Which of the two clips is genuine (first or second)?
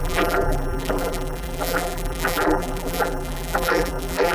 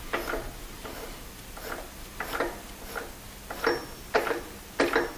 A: second